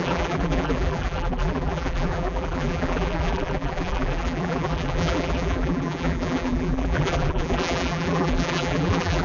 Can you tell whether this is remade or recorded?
remade